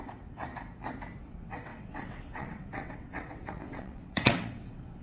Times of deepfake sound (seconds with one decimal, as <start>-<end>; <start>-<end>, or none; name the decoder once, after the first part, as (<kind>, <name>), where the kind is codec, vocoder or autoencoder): 0.0-0.5 (vocoder, WaveNeXt); 1.2-5.0